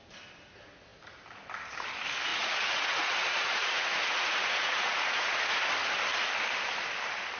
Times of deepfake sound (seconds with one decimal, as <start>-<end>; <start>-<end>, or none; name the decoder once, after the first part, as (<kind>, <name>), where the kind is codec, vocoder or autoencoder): 2.3-5.6 (vocoder, Vocos)